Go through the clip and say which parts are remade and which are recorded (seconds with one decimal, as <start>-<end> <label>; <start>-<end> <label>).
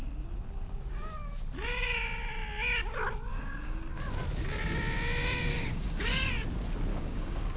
0.0-3.3 recorded; 3.3-3.8 remade; 3.8-5.5 recorded; 5.5-6.3 remade; 6.3-6.9 recorded; 6.9-7.6 remade